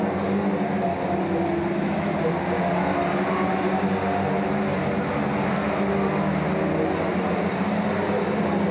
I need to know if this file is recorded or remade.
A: recorded